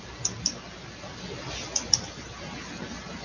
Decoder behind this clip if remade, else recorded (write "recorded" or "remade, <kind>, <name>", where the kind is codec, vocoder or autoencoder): recorded